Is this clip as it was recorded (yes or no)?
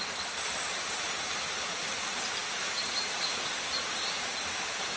no